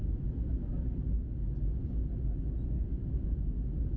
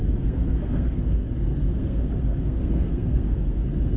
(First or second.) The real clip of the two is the first